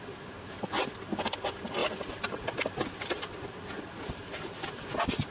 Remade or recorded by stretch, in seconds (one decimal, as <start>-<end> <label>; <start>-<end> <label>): 0.0-5.3 recorded